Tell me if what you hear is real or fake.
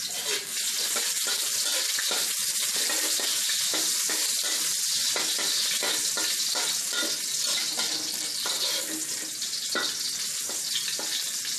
real